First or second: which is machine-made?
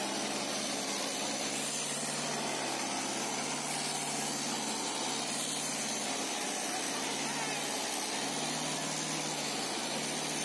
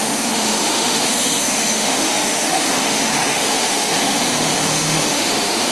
second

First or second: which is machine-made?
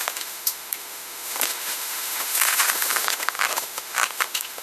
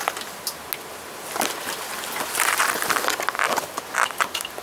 first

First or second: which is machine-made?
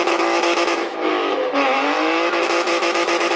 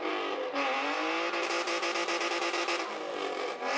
first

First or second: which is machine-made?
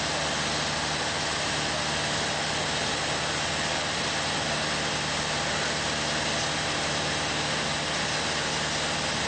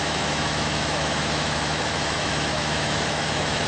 second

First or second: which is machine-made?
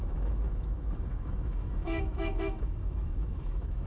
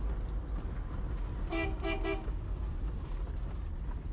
first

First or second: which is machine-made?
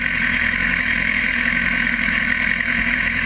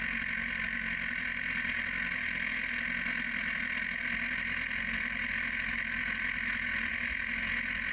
first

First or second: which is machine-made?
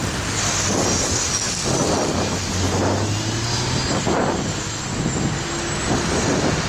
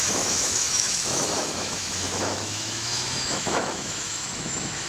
second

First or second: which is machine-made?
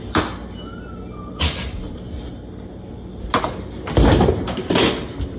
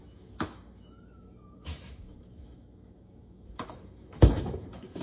second